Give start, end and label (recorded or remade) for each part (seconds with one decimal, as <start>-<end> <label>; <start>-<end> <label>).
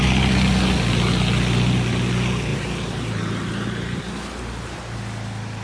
0.0-2.5 recorded; 2.5-4.0 remade; 4.0-5.6 recorded